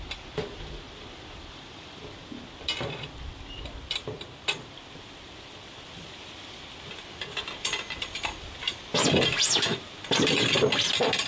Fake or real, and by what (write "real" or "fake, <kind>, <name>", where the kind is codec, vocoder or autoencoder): fake, vocoder, BigVGAN v2